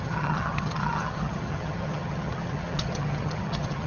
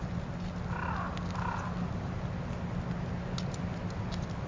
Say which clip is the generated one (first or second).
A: first